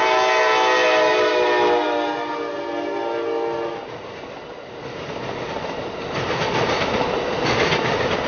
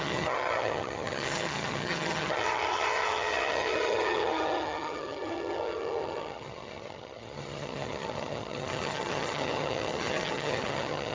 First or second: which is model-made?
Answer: second